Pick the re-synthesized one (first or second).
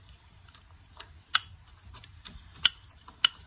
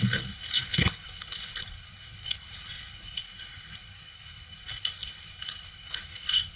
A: second